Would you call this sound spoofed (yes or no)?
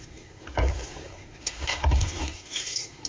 yes